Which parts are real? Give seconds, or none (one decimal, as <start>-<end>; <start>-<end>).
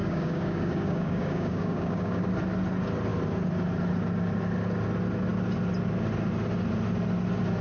2.2-7.6